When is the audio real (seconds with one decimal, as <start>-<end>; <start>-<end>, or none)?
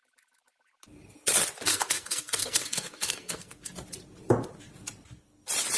0.0-1.7; 3.7-5.8